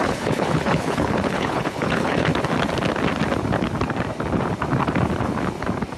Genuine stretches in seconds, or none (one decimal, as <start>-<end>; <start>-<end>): 2.3-6.0